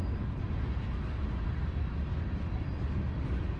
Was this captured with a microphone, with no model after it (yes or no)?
yes